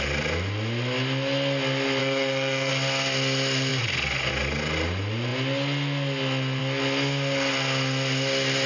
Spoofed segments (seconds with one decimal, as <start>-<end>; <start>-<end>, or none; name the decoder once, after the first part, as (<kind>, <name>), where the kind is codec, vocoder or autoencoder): 2.0-2.7 (codec, SNAC)